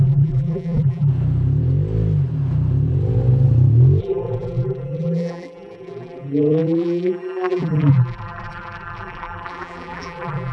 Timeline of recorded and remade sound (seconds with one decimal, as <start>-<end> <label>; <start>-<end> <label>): 0.0-1.1 remade; 1.1-4.0 recorded; 4.0-10.5 remade